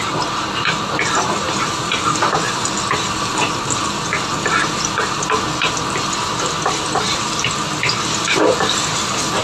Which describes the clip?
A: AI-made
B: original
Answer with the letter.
B